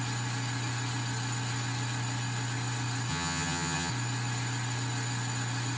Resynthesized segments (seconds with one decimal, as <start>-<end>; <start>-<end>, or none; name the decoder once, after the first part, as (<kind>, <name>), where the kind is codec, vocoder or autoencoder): 3.1-3.9 (vocoder, HiFi-GAN)